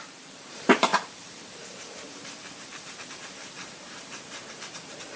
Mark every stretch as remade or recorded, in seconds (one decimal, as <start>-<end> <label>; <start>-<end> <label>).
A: 0.0-5.2 remade